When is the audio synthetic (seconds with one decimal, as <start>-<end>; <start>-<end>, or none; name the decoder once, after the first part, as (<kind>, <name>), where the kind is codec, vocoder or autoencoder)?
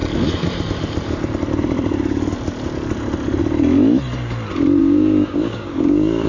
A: 4.8-6.3 (codec, DAC)